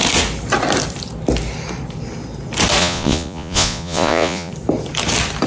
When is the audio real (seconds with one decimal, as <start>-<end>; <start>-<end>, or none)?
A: 0.0-2.8; 4.5-5.5